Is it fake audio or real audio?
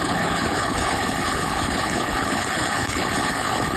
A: fake